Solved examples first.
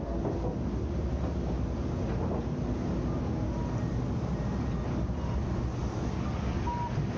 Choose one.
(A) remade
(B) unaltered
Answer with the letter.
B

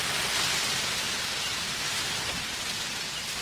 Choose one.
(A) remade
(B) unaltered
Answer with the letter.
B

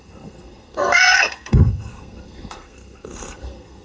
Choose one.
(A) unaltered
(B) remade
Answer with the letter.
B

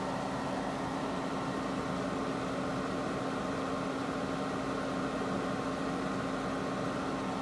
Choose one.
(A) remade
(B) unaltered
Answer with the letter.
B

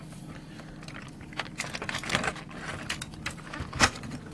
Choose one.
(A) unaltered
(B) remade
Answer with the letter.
A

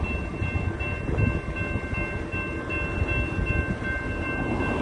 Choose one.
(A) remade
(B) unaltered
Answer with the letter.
B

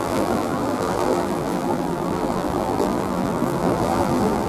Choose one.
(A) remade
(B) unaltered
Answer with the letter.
A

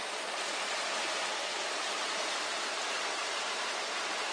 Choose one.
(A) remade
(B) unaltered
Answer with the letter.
B